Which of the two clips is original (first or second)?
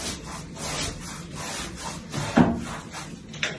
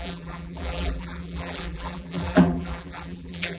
first